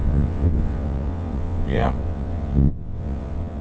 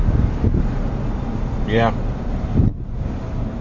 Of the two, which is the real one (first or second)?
second